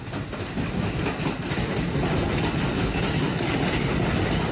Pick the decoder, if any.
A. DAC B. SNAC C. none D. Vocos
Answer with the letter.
C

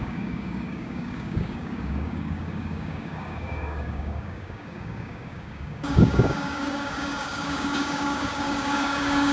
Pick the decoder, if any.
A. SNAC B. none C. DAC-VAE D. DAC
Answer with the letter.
D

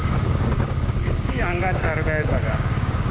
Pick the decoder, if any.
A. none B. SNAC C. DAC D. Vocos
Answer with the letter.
C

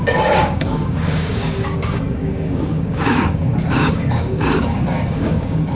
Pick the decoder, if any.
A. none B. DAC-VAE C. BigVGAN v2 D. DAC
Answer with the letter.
D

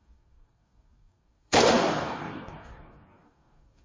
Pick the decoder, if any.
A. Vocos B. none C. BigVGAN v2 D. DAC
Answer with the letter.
D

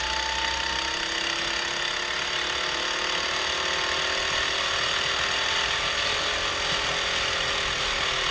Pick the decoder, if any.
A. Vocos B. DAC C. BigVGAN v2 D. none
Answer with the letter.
D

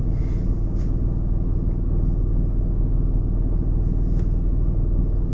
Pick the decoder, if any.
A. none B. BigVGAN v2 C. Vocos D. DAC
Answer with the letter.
A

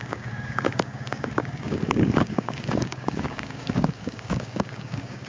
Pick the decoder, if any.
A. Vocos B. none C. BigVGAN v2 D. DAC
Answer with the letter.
D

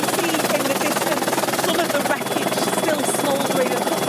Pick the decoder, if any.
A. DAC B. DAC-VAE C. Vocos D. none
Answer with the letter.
D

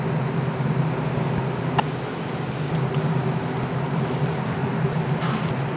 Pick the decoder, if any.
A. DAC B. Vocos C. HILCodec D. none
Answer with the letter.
D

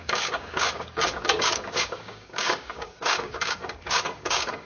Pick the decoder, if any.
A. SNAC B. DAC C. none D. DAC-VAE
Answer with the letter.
B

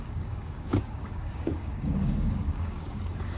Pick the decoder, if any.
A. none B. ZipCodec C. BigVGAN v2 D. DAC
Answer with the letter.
D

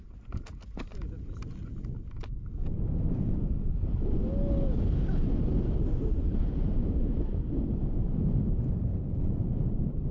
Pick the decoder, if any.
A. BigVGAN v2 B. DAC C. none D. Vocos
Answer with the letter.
C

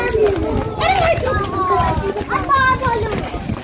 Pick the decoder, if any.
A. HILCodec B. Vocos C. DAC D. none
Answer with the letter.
D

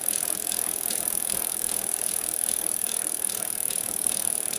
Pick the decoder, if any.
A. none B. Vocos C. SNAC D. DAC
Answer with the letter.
D